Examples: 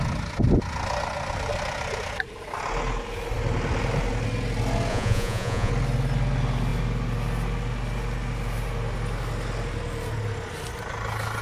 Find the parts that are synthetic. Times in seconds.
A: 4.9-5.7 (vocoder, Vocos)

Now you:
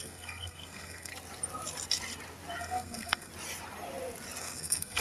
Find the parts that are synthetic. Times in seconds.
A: 0.0-1.1 (codec, SNAC); 2.6-3.3; 4.4-5.0

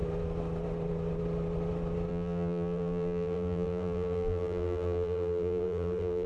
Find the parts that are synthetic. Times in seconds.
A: 2.1-6.3 (vocoder, BigVGAN v2)

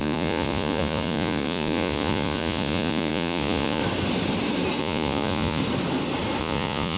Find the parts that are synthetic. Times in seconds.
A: 0.0-3.8 (vocoder, Vocos); 4.8-5.6; 6.4-7.0

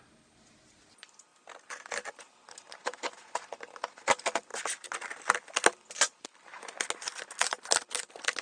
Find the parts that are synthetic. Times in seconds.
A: none

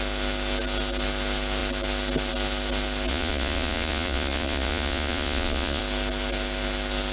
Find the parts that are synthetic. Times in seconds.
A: 3.1-5.8 (vocoder, Vocos)

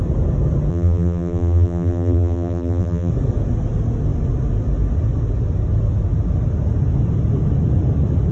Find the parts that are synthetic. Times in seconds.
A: 0.7-3.1 (vocoder, BigVGAN v2)